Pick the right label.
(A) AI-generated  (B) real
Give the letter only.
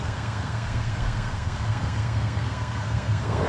A